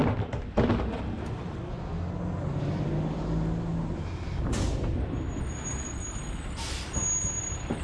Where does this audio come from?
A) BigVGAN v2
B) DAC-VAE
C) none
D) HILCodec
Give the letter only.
C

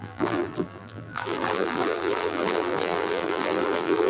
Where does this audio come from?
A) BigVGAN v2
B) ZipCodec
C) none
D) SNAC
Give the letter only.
A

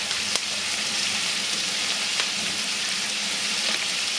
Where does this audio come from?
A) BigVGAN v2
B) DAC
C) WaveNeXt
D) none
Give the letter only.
A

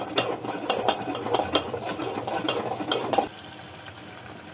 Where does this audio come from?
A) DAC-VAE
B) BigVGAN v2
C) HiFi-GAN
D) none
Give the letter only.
B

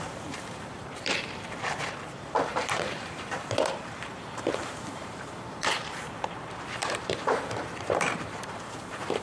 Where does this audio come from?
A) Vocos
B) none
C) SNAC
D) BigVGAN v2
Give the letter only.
D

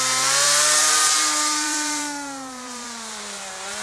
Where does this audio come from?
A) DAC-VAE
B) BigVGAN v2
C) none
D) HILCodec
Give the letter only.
B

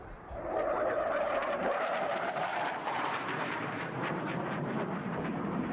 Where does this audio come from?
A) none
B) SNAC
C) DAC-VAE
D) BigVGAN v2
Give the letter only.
D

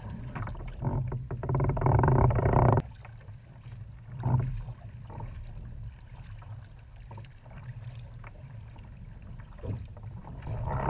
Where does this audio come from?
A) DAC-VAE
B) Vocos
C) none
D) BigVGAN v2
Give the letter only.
D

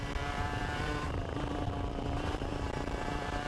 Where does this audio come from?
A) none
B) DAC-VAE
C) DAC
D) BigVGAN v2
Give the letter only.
D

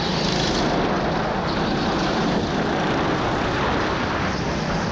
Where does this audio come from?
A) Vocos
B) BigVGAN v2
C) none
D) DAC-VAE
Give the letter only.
C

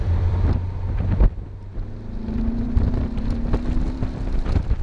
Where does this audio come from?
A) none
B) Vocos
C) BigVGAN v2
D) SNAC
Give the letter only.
C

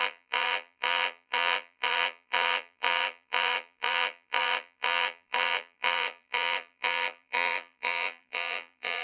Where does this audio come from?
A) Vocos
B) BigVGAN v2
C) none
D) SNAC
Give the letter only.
B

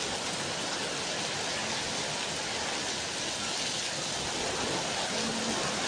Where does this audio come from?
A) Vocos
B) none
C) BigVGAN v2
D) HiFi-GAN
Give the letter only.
B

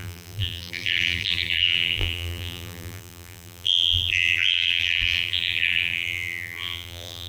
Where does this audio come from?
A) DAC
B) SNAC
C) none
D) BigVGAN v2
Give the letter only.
D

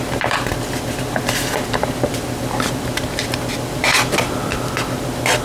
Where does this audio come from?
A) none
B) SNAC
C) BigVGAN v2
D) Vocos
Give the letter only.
C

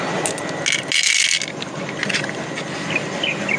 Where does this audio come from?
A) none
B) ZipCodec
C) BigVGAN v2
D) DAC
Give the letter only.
A